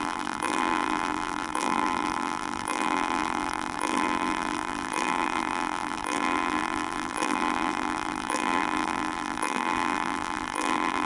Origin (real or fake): fake